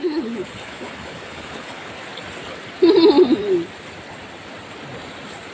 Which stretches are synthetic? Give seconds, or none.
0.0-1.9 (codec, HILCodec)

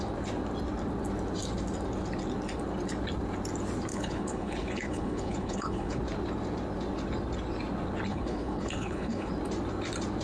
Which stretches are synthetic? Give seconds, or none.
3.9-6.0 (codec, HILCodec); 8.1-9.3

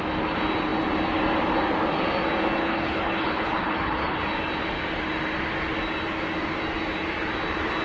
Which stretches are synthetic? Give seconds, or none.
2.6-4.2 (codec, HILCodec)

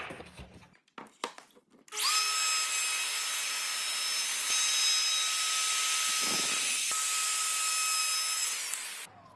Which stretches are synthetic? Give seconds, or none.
none

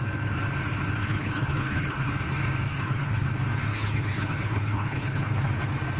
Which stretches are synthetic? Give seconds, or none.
1.0-2.1 (codec, HILCodec); 2.7-3.3; 3.7-5.6

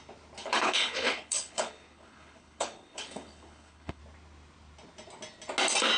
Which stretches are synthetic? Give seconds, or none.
0.4-4.0 (codec, HILCodec)

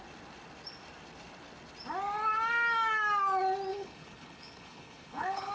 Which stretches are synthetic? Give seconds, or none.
3.7-5.5 (codec, HILCodec)